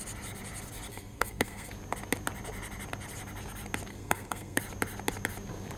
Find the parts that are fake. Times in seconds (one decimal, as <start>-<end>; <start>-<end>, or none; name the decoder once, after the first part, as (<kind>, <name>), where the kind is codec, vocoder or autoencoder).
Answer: 0.9-1.7 (codec, SNAC); 3.9-4.6